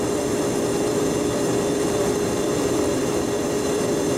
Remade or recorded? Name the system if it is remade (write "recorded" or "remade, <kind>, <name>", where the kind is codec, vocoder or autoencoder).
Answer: remade, vocoder, BigVGAN v2